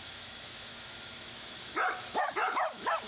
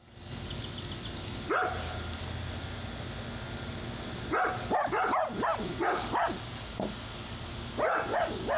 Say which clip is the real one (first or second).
second